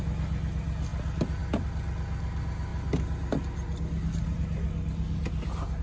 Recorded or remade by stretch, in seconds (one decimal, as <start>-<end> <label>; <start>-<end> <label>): 0.0-5.8 recorded